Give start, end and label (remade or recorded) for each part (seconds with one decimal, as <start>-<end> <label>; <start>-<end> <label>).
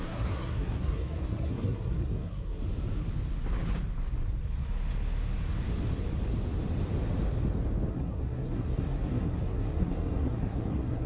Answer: 0.0-2.6 remade; 2.6-7.9 recorded; 7.9-11.1 remade